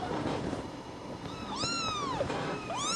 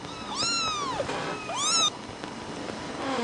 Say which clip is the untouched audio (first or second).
second